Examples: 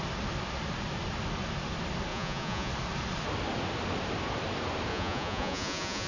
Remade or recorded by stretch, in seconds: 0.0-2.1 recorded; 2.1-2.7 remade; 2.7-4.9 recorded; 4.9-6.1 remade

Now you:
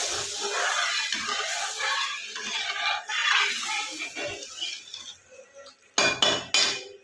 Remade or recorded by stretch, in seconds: 0.0-7.0 recorded

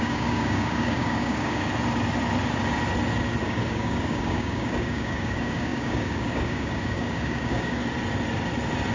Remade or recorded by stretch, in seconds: 0.0-1.7 remade; 1.7-3.4 recorded; 3.4-7.8 remade; 7.8-8.9 recorded

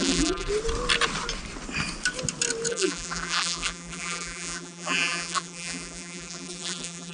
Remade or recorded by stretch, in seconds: 0.0-0.5 remade; 0.5-2.7 recorded; 2.7-7.1 remade

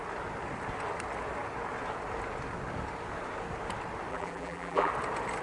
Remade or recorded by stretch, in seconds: 0.0-4.1 recorded; 4.1-4.9 remade; 4.9-5.4 recorded